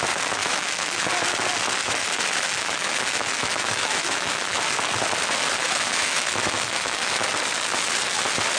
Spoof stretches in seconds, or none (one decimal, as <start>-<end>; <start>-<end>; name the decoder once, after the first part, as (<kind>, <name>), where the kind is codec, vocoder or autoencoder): 0.4-1.1 (autoencoder, DAC-VAE); 1.8-4.6; 5.6-7.3